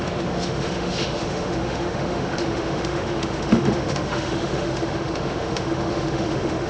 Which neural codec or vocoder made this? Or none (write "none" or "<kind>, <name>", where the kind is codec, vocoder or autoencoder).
autoencoder, DAC-VAE